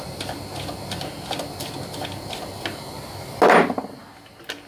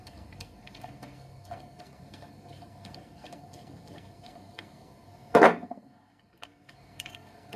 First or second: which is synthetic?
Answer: second